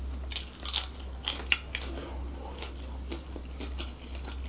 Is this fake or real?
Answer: real